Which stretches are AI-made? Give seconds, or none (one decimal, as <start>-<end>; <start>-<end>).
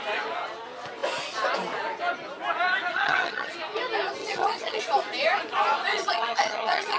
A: 2.9-3.5; 4.2-4.8; 5.9-7.0